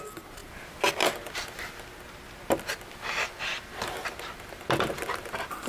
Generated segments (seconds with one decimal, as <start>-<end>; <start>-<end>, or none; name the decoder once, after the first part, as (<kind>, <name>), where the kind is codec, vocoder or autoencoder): none